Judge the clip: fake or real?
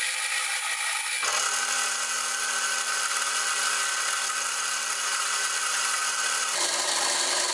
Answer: real